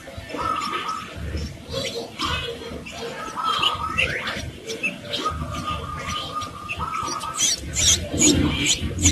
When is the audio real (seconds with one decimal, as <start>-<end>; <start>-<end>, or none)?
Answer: 0.0-9.1